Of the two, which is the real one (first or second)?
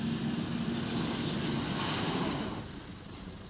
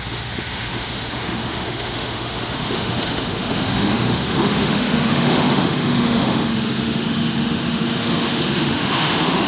first